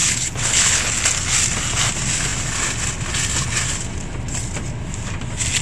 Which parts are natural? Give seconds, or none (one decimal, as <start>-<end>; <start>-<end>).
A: 0.9-5.6

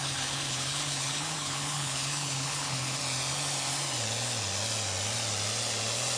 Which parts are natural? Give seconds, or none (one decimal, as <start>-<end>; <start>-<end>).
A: 3.0-6.2

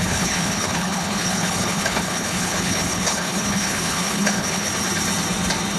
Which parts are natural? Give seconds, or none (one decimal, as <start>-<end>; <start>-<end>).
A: 4.7-5.8

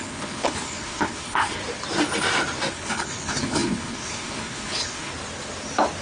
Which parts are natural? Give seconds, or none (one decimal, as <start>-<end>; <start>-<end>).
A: 1.6-2.7; 5.1-6.0

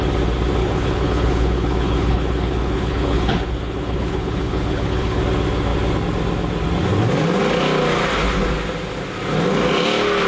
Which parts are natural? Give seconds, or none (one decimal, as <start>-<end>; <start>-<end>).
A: 0.0-0.6; 5.2-10.3

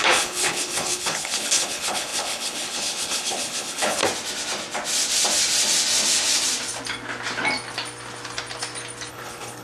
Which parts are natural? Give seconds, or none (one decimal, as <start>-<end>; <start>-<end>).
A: 4.0-9.1

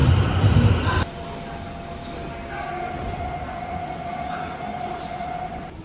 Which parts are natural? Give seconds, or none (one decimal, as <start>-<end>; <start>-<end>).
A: 0.0-5.8